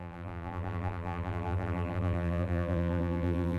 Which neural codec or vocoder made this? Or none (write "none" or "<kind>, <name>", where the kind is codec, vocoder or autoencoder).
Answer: vocoder, BigVGAN v2